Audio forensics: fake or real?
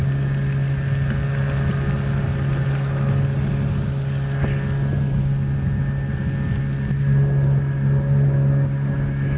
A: real